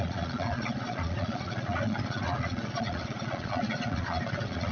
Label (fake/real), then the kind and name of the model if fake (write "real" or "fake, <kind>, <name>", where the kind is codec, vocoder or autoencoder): fake, vocoder, Vocos